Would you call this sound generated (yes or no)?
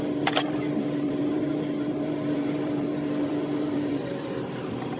yes